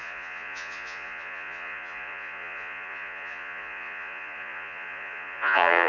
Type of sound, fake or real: fake